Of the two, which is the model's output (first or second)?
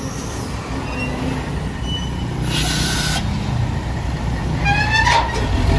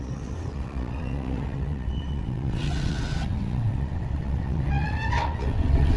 second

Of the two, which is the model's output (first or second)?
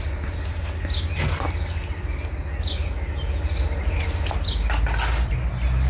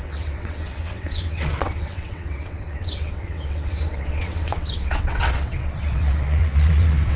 second